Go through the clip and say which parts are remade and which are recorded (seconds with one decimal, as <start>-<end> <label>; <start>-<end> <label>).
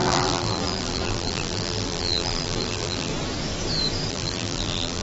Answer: 0.0-3.1 remade; 3.1-4.1 recorded; 4.1-5.0 remade